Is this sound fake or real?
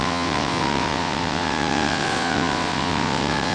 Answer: fake